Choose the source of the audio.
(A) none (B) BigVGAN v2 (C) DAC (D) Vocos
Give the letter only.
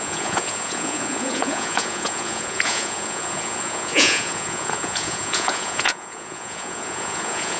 D